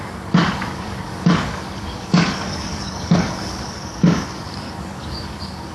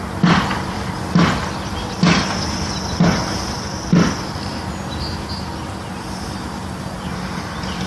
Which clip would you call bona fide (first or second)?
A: second